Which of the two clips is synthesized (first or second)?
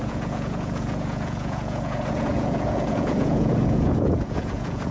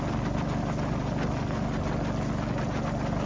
first